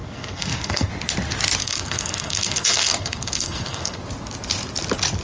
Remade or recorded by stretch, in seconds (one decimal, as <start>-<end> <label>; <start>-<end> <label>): 0.0-0.9 remade; 0.9-1.6 recorded; 1.6-4.0 remade; 4.0-5.2 recorded